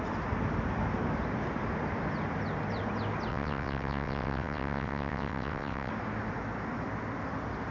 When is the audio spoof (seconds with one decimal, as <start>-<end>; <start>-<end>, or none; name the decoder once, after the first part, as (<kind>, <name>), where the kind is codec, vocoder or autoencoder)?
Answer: 3.3-5.9 (vocoder, WaveNeXt)